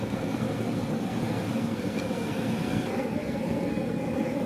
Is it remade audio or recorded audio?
remade